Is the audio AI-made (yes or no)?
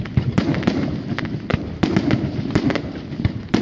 no